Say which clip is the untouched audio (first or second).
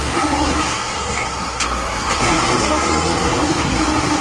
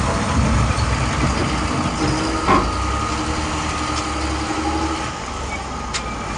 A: second